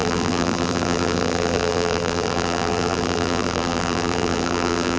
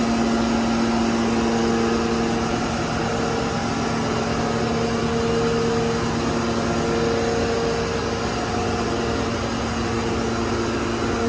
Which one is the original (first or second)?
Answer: second